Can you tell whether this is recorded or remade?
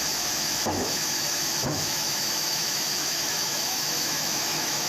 remade